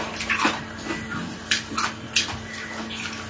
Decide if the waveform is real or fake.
fake